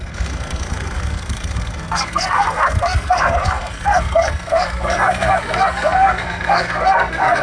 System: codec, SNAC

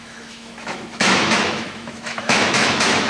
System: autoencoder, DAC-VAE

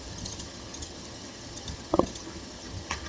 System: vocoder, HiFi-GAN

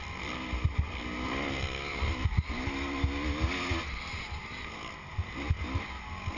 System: none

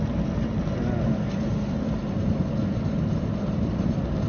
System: none